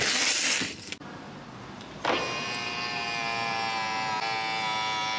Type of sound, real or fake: real